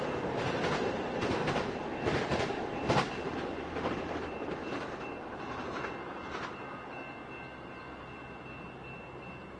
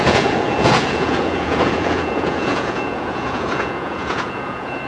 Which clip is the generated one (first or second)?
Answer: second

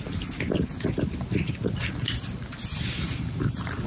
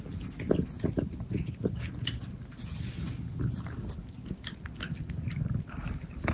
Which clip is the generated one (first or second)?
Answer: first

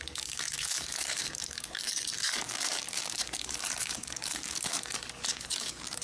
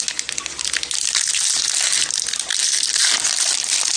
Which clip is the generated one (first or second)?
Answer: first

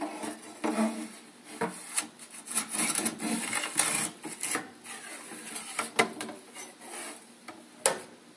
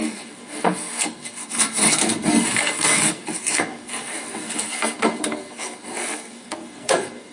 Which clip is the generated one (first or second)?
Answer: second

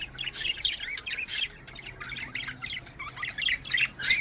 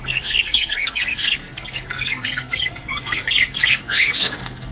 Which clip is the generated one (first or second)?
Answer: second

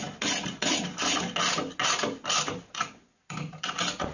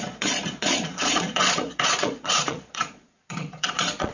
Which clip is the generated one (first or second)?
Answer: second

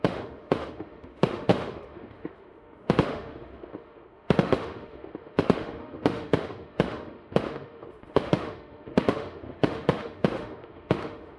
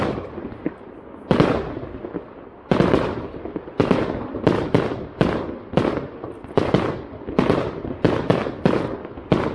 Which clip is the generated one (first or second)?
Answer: first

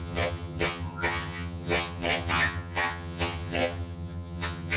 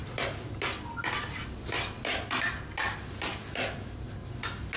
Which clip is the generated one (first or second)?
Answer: first